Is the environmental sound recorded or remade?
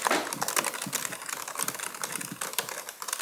recorded